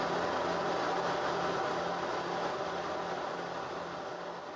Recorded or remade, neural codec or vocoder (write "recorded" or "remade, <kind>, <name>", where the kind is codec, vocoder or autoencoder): recorded